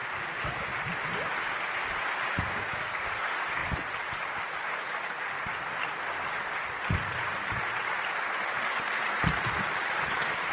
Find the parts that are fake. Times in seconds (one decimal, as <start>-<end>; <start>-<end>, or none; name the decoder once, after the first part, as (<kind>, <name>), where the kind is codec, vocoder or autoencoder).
1.6-3.6 (vocoder, BigVGAN v2); 4.1-10.5